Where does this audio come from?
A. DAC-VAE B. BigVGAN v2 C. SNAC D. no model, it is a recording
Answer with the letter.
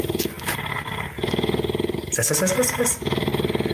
D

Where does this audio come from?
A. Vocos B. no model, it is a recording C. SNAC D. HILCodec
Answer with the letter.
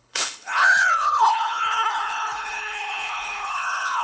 D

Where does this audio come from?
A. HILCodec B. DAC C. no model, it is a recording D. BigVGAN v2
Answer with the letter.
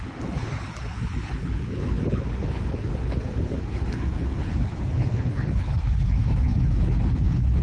A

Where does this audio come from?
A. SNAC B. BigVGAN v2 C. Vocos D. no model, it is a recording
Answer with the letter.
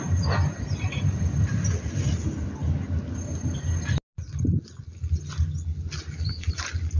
D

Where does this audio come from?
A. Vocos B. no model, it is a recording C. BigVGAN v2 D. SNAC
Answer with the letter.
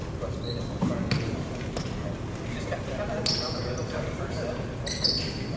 B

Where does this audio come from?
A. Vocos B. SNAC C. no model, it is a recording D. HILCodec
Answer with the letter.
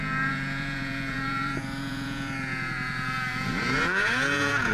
A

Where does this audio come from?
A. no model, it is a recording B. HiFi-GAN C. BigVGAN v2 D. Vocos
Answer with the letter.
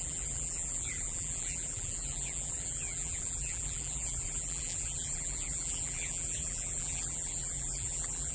C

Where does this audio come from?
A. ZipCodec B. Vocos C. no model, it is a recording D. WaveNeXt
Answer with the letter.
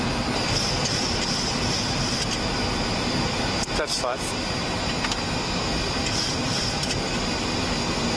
C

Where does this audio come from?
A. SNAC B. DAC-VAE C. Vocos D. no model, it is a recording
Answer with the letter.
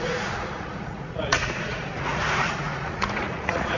C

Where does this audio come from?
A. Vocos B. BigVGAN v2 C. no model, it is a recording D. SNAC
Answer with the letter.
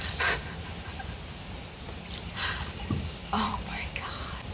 B